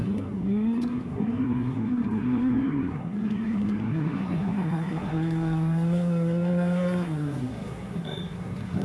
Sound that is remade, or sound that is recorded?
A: remade